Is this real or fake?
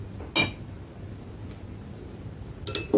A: real